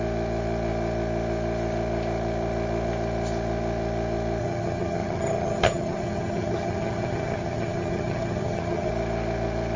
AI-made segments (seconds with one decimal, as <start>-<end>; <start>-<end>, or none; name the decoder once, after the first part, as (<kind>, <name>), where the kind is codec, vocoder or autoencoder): 4.4-8.9 (vocoder, HiFi-GAN)

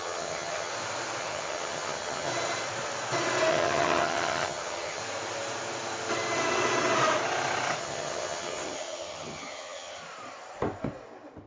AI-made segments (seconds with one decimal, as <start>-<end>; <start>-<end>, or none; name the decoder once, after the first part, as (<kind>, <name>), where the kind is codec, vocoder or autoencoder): 0.0-0.7 (vocoder, HiFi-GAN); 1.2-2.3; 3.5-5.0; 7.8-10.0

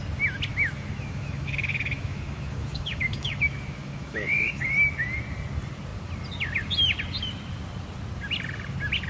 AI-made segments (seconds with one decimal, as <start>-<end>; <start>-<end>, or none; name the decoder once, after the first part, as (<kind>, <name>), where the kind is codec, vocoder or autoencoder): 0.5-4.6 (autoencoder, DAC-VAE)

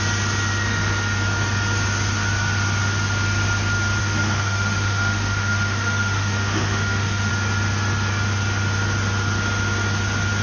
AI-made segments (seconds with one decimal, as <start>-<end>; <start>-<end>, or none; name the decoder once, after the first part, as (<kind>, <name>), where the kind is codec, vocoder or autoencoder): 4.0-7.3 (autoencoder, DAC-VAE)

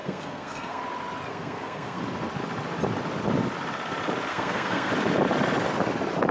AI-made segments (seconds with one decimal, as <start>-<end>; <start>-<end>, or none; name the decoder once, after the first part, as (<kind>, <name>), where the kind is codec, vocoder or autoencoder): 0.0-0.8 (codec, SNAC); 1.3-2.0; 4.3-4.9

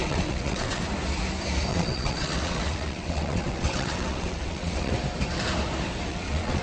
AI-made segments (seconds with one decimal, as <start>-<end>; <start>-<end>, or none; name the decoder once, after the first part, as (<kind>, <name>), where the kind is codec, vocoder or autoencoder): 0.0-0.8 (vocoder, WaveNeXt); 1.7-4.9; 6.1-6.6

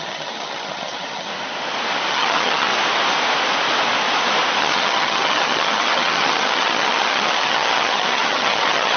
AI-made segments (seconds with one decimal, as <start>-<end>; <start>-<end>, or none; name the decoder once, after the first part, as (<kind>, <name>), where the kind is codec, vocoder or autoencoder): 0.0-1.3 (vocoder, HiFi-GAN); 2.1-2.7; 4.6-9.0

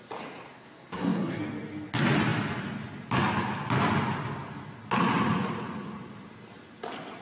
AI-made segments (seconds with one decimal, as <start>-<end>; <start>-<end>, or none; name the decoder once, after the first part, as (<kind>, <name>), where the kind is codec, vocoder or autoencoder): 0.5-1.4 (codec, SNAC)